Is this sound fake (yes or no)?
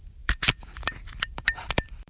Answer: yes